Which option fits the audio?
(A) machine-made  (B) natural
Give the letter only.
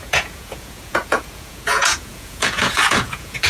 A